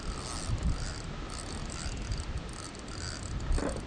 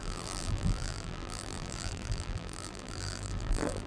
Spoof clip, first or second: second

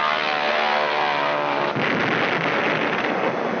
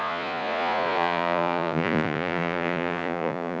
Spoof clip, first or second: second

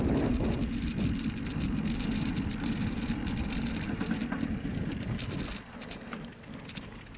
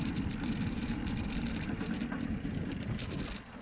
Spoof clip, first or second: second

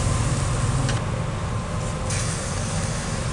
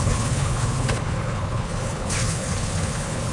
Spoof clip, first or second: second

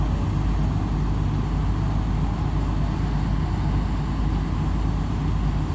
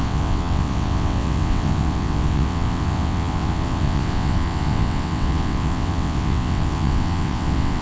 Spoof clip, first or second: second